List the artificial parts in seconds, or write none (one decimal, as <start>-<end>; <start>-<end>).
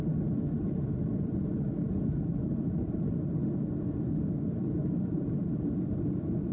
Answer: 2.5-3.0; 4.8-5.9